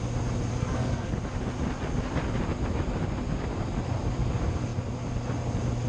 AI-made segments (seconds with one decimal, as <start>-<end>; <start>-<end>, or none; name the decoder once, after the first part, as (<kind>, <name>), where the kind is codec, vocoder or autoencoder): 0.5-1.1 (codec, SNAC)